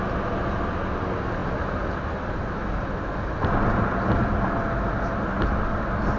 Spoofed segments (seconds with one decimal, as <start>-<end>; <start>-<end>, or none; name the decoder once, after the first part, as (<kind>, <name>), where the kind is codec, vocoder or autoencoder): none

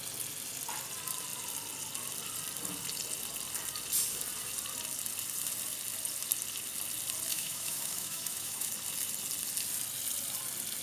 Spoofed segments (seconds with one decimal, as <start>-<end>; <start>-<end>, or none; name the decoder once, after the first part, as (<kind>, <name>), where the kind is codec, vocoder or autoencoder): 7.3-8.7 (autoencoder, DAC-VAE)

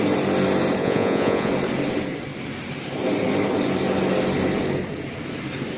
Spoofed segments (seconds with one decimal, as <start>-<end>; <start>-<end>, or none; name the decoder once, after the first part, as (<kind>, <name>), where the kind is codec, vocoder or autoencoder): 0.8-1.5 (vocoder, Vocos)

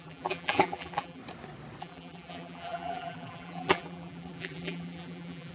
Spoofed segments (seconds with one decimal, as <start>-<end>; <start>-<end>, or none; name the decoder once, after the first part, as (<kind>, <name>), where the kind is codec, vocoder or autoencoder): 0.0-1.2 (vocoder, BigVGAN v2); 1.8-5.5

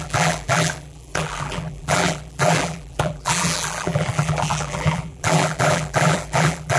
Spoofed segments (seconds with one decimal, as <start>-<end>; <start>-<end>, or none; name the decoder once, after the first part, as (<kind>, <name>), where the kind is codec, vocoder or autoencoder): 0.0-6.8 (vocoder, BigVGAN v2)

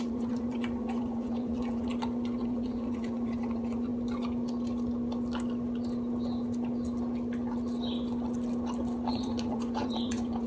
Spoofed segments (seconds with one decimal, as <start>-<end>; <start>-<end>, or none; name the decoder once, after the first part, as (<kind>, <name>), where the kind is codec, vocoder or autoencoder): 0.0-1.9 (vocoder, Vocos); 2.4-3.9; 9.1-10.5

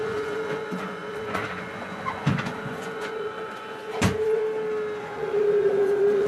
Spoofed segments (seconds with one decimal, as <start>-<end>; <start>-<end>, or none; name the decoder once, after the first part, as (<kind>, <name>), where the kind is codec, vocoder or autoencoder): 0.0-4.4 (vocoder, Vocos); 5.0-6.3

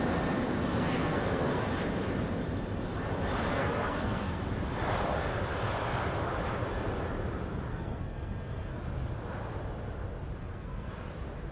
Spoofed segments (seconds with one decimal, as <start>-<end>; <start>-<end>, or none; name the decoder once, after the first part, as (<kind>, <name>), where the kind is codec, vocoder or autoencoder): 0.7-1.6 (codec, SNAC); 3.5-4.4; 7.7-8.8; 10.4-10.9